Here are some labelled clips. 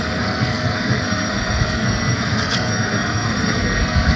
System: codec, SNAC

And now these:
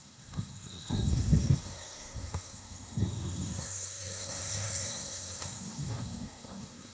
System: codec, SNAC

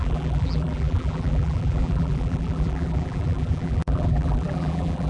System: vocoder, BigVGAN v2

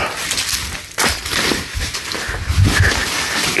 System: none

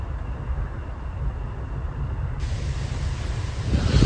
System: none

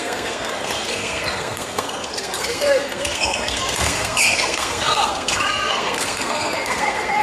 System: codec, SNAC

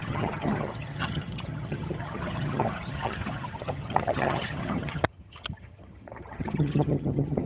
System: vocoder, HiFi-GAN